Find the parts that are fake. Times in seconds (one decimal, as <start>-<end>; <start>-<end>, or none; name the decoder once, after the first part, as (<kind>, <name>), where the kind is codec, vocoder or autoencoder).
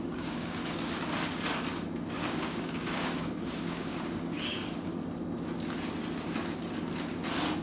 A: 0.0-0.6 (codec, DAC); 2.1-4.9